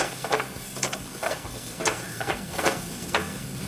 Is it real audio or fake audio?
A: fake